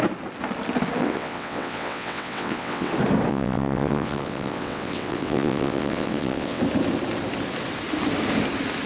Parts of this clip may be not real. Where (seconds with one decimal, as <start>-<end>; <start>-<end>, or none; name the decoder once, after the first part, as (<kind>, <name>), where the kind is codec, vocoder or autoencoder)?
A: 1.0-2.9 (vocoder, WaveNeXt); 3.3-6.6